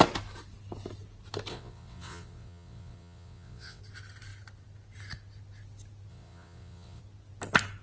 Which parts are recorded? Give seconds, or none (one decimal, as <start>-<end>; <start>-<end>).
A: 0.0-1.5; 3.8-6.1; 7.0-7.8